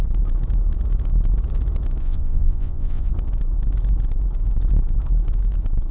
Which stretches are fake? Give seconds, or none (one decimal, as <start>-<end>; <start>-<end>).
2.0-3.1

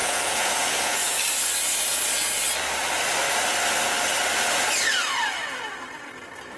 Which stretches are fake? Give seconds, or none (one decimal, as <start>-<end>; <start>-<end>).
0.0-1.2

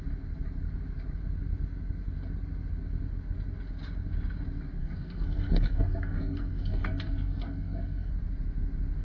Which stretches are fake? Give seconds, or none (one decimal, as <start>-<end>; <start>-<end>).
4.8-8.1